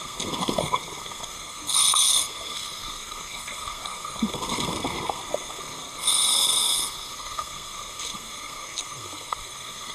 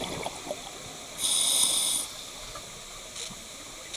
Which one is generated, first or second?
first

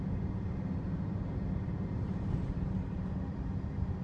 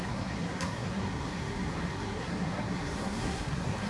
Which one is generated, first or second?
second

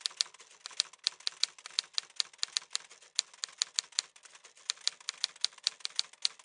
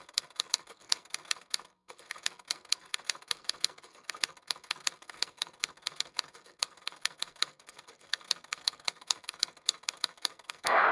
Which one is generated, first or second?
second